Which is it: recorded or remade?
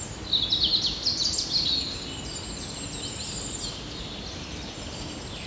recorded